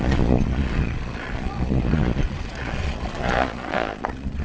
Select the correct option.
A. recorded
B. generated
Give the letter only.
B